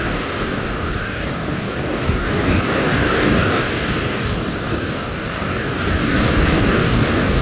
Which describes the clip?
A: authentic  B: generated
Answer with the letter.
B